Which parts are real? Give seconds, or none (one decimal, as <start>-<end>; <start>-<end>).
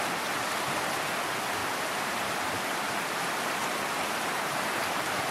0.0-1.6; 4.8-5.3